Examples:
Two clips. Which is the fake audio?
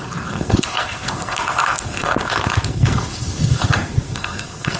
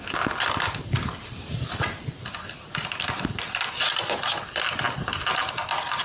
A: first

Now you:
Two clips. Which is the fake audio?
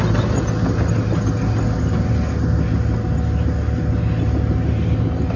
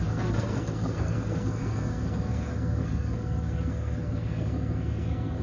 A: second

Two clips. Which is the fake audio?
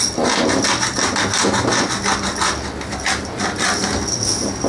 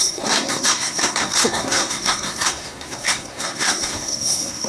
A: second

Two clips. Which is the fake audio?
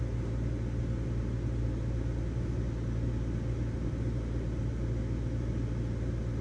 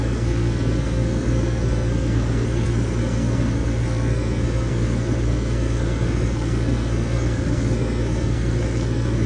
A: second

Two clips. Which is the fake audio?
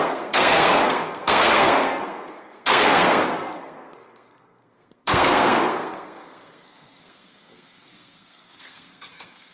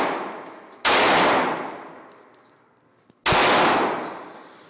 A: first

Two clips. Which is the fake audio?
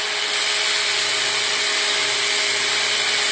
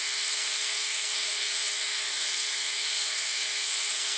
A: second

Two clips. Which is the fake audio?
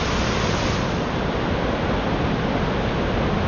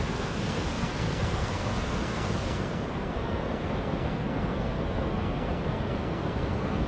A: second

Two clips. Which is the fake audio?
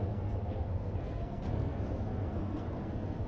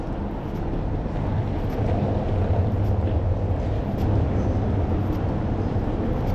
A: first